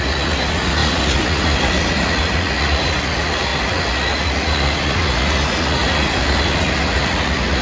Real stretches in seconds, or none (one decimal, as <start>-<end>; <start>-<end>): none